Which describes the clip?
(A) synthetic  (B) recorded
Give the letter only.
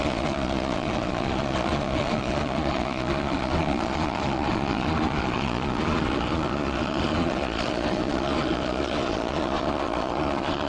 A